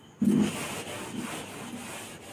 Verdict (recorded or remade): recorded